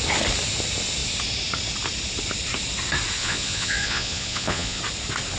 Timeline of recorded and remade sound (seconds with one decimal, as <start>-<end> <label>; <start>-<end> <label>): 0.0-3.2 recorded; 3.2-4.8 remade; 4.8-5.4 recorded